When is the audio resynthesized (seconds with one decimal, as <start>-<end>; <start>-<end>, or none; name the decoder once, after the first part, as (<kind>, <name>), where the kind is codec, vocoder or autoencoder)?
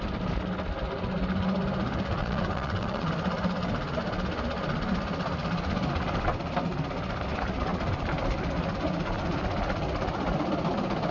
2.2-3.1 (vocoder, WaveNeXt)